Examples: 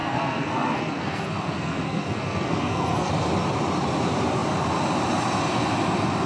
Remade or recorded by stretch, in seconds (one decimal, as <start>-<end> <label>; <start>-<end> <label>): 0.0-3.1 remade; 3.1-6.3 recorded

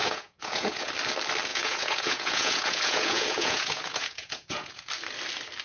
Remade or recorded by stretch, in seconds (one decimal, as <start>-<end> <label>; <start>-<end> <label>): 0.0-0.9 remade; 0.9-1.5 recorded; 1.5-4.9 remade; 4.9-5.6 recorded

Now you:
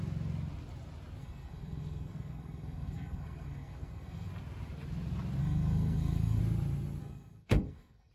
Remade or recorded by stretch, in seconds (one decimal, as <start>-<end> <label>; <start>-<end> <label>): 0.0-1.2 recorded; 1.2-4.3 remade; 4.3-5.4 recorded; 5.4-6.4 remade; 6.4-7.0 recorded; 7.0-8.1 remade

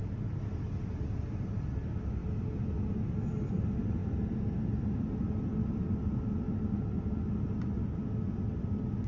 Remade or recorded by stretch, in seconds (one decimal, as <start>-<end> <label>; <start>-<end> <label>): 0.0-9.1 recorded

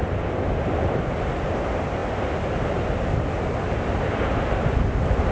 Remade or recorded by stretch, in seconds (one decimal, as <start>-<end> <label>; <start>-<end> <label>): 0.0-5.3 recorded